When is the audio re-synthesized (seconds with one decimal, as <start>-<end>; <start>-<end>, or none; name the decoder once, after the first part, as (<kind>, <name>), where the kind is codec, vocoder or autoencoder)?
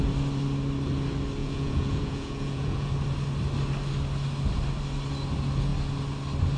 1.4-2.9 (vocoder, Vocos)